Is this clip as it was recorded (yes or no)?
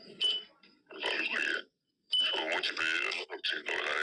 yes